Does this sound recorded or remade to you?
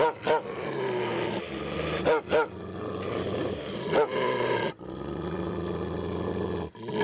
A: recorded